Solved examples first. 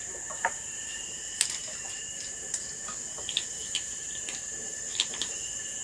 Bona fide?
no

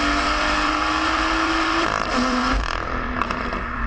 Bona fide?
no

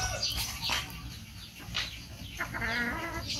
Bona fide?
yes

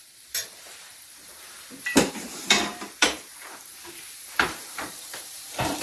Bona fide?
no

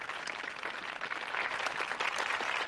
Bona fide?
yes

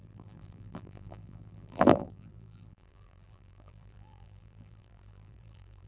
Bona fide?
no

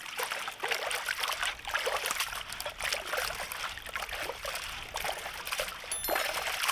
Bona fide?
yes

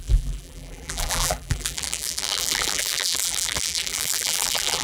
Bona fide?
no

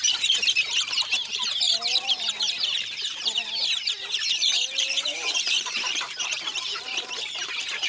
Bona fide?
no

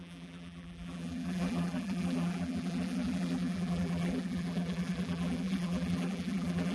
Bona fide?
no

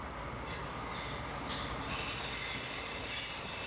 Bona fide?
yes